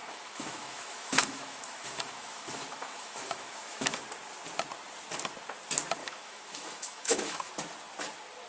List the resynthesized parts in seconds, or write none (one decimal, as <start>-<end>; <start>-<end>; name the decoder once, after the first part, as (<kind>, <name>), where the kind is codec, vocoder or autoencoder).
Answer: 0.0-4.0 (autoencoder, DAC-VAE); 6.0-7.5